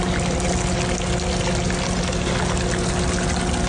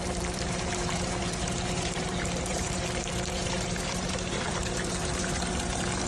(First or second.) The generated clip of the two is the second